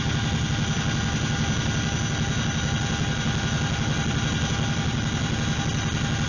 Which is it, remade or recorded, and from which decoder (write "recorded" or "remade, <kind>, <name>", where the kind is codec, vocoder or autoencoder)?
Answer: recorded